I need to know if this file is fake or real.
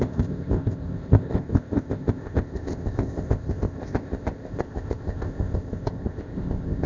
fake